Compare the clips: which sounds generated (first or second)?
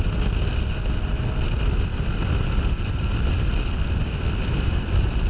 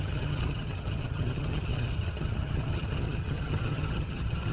second